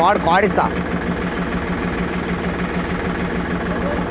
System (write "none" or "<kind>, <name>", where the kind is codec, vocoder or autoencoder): none